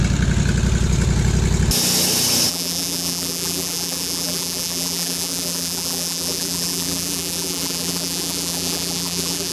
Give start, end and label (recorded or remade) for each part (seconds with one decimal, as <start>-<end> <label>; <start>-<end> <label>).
0.0-2.5 recorded; 2.5-9.5 remade